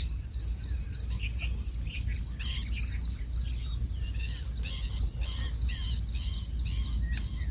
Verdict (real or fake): real